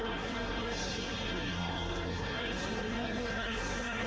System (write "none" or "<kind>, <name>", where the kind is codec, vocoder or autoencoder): codec, SNAC